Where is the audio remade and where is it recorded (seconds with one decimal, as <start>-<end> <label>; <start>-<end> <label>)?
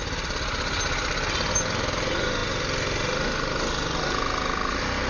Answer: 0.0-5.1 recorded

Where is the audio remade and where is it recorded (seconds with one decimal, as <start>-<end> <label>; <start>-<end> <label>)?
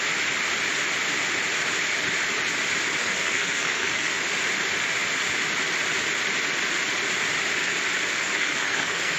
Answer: 0.0-3.0 recorded; 3.0-4.2 remade; 4.2-8.2 recorded; 8.2-9.2 remade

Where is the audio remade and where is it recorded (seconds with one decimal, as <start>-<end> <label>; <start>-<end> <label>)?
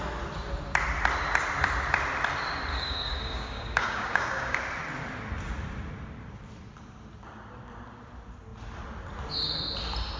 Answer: 0.0-2.7 recorded; 2.7-4.6 remade; 4.6-10.2 recorded